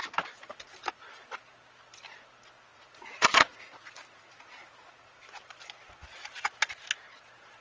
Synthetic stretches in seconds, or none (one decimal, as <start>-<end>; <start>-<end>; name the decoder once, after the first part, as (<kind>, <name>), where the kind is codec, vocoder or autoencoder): 2.7-5.2 (vocoder, Vocos)